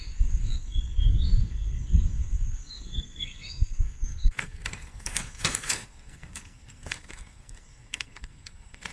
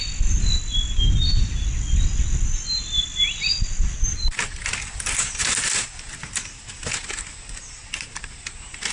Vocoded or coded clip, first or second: first